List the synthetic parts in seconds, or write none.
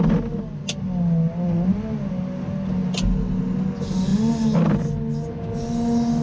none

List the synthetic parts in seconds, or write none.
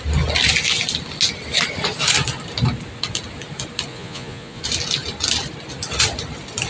3.9-4.6 (vocoder, Vocos)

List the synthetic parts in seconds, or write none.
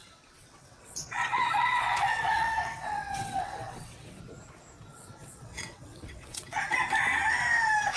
0.0-4.2 (vocoder, WaveNeXt); 4.9-6.6